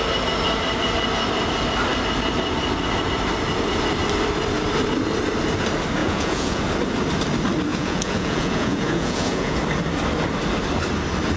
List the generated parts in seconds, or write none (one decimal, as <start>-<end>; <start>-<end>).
6.0-6.6; 7.7-9.6